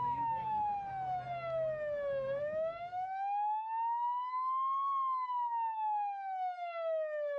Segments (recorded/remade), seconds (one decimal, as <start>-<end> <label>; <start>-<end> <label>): 0.0-0.4 remade; 0.4-2.4 recorded; 2.4-7.4 remade